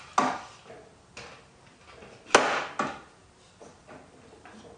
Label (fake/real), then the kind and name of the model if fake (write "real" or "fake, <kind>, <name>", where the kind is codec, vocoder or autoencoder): real